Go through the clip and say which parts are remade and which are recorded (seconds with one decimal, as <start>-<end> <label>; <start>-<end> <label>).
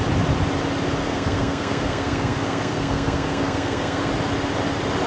0.0-1.0 recorded; 1.0-4.1 remade; 4.1-5.1 recorded